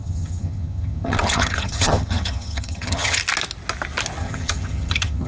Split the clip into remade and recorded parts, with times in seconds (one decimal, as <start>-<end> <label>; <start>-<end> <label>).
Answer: 0.0-3.2 remade; 3.2-4.2 recorded; 4.2-5.3 remade